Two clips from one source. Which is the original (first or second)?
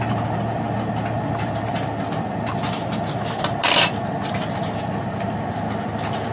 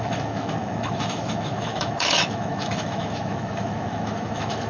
first